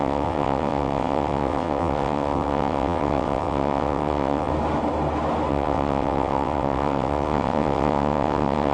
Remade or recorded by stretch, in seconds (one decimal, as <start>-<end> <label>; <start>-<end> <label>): 0.0-4.5 remade; 4.5-5.5 recorded; 5.5-8.7 remade

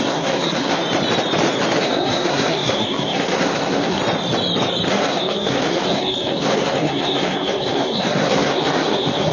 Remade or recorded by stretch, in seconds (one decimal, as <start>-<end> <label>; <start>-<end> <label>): 0.0-0.8 remade; 0.8-1.8 recorded; 1.8-4.0 remade; 4.0-4.9 recorded; 4.9-9.3 remade

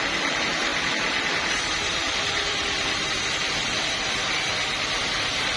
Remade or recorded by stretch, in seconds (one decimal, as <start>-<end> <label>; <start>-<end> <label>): 0.0-5.6 remade

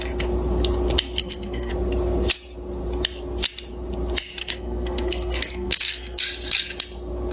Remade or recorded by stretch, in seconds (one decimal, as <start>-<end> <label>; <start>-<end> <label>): 0.0-1.2 recorded; 1.2-1.7 remade; 1.7-4.4 recorded; 4.4-6.2 remade; 6.2-7.3 recorded